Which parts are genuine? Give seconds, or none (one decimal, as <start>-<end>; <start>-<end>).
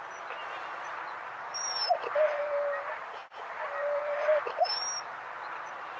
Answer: 0.0-0.4; 2.3-3.2; 4.0-6.0